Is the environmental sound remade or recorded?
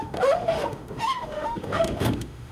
remade